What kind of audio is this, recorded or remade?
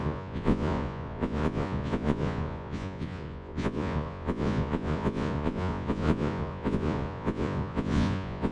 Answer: remade